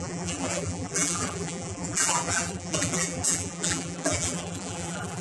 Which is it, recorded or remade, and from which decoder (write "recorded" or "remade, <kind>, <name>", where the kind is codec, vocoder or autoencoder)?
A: remade, vocoder, BigVGAN v2